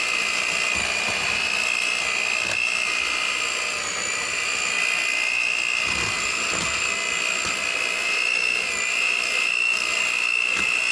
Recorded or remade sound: recorded